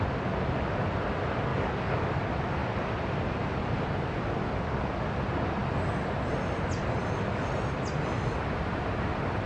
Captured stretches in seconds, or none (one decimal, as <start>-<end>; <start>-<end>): 0.0-1.5; 2.0-9.5